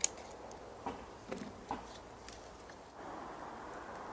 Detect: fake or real real